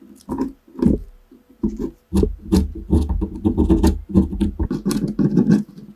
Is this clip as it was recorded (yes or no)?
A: yes